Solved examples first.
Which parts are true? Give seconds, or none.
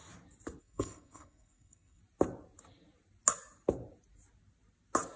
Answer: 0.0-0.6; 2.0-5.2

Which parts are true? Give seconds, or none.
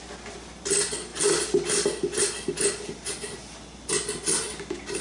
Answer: 0.0-5.0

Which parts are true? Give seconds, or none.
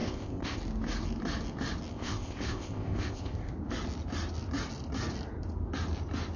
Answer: 0.6-1.9; 3.5-6.4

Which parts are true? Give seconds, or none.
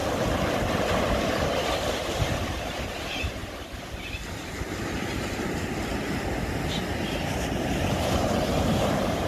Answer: 0.0-1.7; 3.4-7.6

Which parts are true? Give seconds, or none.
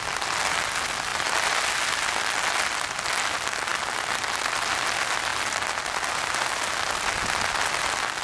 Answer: 0.0-8.2